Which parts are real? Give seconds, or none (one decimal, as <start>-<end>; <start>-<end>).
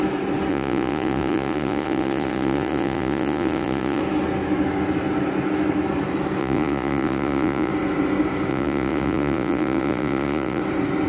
0.0-0.5; 4.0-6.4; 7.7-8.5; 10.6-11.1